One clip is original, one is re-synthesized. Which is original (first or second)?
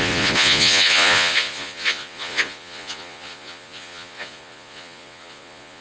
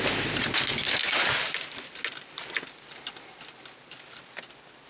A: second